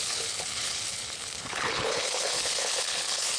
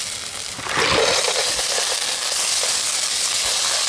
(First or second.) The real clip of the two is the second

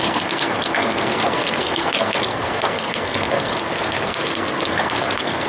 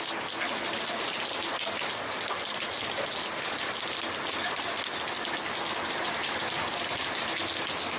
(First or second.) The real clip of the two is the second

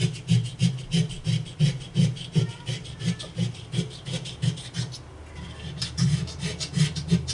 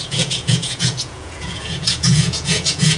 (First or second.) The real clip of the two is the first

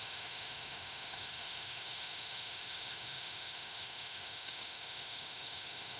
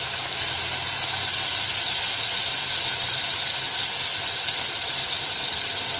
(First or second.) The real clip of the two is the second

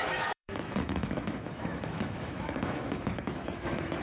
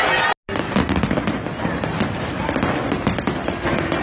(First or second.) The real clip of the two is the second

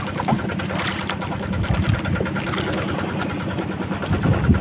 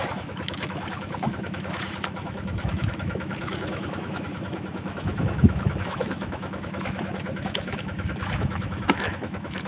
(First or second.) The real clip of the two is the first